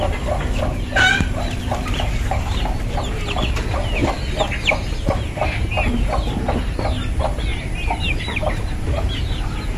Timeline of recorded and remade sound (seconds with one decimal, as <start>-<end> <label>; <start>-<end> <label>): 0.0-0.9 recorded; 0.9-2.8 remade; 2.8-7.5 recorded; 7.5-9.4 remade; 9.4-9.8 recorded